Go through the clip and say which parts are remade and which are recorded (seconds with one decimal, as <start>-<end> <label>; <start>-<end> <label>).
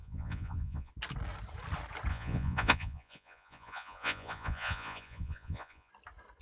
0.0-0.9 remade; 0.9-2.1 recorded; 2.1-5.9 remade; 5.9-6.4 recorded